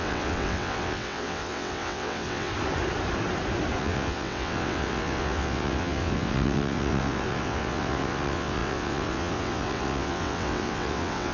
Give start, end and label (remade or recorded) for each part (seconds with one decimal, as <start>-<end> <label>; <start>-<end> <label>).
0.0-2.5 remade; 2.5-3.8 recorded; 3.8-11.3 remade